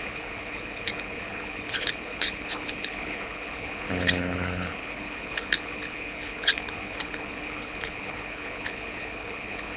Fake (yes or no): yes